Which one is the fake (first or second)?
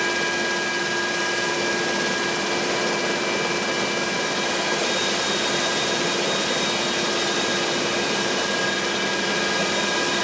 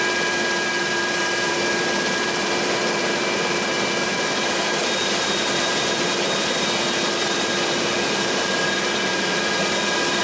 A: second